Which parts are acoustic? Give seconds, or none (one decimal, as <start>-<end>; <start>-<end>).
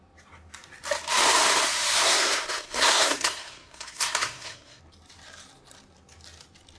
0.0-2.0; 4.8-6.8